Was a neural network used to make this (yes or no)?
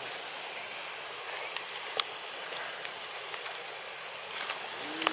no